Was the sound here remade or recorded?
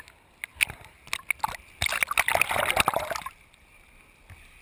recorded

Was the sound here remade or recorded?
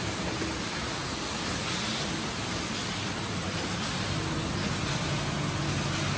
recorded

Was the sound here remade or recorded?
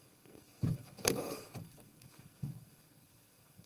remade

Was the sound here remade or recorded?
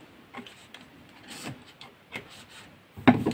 recorded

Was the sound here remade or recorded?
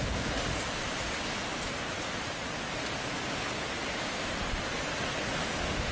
recorded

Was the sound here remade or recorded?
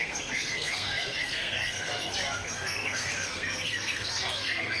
remade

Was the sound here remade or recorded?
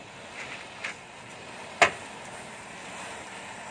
recorded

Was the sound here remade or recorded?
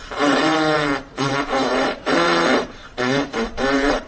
remade